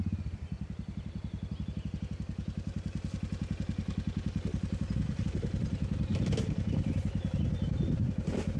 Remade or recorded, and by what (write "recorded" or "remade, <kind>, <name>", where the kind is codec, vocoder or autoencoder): recorded